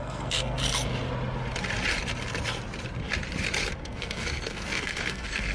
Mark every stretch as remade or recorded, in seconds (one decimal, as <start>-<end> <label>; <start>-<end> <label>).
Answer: 0.0-0.6 remade; 0.6-3.8 recorded; 3.8-5.5 remade